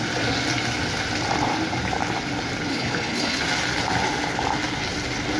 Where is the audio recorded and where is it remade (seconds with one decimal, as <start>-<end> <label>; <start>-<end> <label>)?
0.0-2.7 recorded; 2.7-3.4 remade; 3.4-5.4 recorded